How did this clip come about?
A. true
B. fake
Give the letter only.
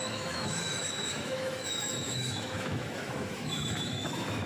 B